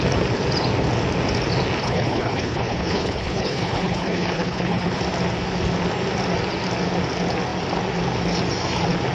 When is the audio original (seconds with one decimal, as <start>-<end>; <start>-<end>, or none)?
0.0-1.8; 5.0-9.1